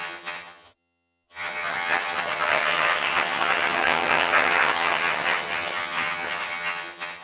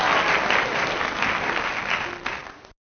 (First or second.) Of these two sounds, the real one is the second